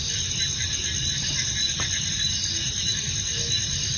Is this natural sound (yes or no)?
yes